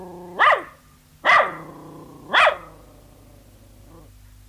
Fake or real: real